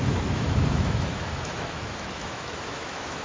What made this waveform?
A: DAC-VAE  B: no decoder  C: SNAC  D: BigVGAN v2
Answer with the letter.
A